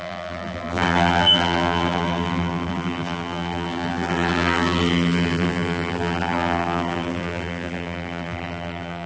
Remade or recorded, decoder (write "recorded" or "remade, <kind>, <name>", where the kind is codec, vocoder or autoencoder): remade, vocoder, BigVGAN v2